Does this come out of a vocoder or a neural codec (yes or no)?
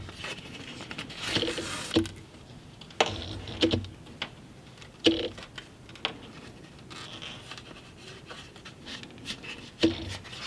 no